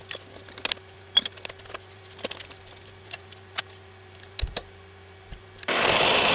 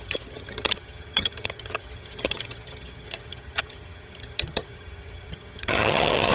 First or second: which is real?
first